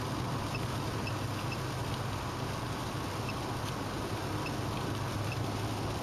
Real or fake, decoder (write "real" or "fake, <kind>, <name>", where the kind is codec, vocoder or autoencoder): real